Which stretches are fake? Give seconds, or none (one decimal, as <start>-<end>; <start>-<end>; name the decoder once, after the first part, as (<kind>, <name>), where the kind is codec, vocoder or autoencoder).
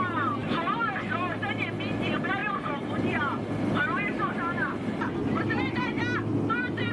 2.4-6.0 (vocoder, BigVGAN v2)